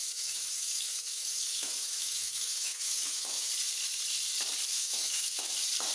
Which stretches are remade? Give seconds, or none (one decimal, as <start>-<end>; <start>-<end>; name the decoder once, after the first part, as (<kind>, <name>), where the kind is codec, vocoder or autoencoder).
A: 0.0-3.5 (autoencoder, DAC-VAE); 4.7-5.5